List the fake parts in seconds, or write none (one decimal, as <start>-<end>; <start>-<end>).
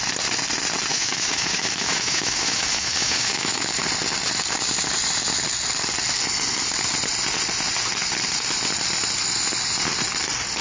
0.9-3.8